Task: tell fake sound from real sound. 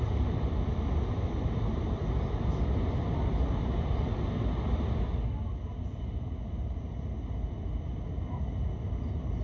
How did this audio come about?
real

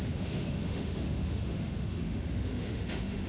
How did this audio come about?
fake